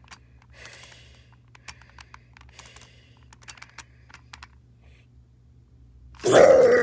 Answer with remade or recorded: recorded